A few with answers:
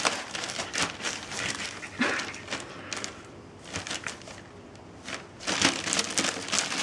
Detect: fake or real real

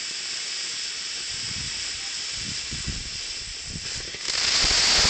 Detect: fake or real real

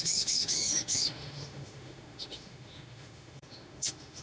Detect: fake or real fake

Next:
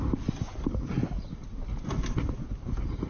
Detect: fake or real real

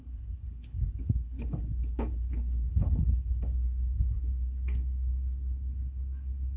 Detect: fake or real fake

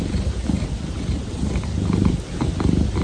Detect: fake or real real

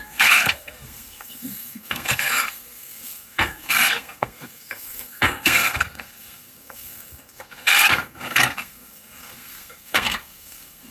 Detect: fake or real fake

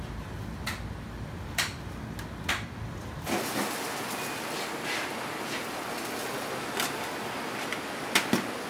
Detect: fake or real real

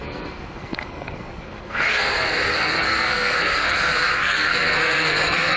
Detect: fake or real fake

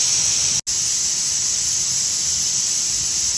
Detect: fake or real real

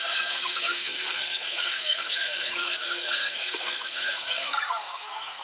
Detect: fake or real fake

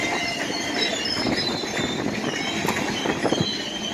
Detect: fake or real real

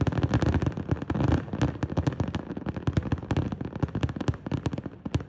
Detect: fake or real real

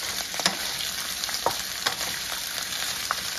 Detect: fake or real fake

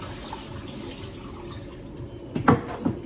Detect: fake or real real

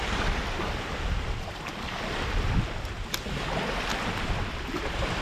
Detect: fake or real real